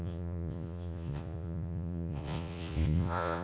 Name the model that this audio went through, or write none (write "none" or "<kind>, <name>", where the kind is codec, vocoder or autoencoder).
vocoder, Vocos